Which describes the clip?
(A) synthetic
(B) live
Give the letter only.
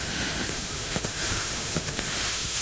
A